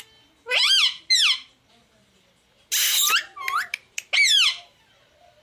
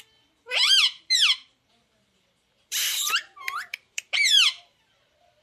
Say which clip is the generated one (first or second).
second